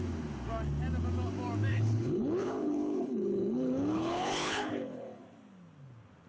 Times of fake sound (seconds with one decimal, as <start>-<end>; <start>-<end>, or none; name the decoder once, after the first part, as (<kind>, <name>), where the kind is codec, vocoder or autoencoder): 1.7-5.2 (codec, HILCodec)